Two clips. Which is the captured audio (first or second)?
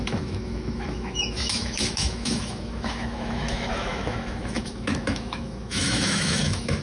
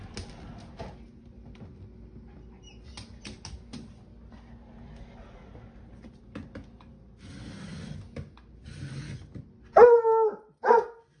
second